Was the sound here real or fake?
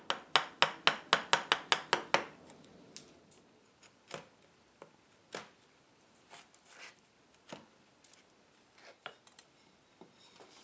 real